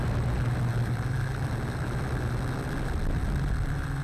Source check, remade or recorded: recorded